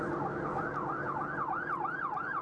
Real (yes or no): yes